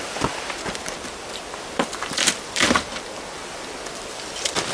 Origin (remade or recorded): remade